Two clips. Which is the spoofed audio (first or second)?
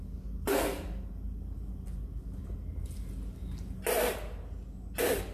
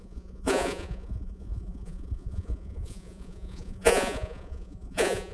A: second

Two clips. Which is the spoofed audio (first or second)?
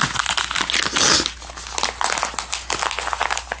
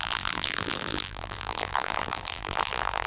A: second